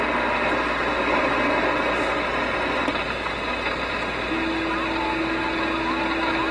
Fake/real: real